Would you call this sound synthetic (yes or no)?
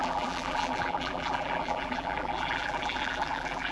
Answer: yes